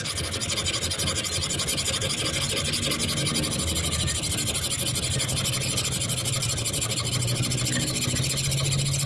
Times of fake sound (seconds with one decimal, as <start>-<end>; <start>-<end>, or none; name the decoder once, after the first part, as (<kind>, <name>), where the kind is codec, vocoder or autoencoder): none